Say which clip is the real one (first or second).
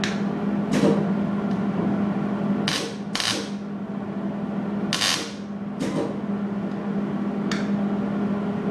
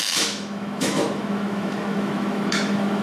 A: first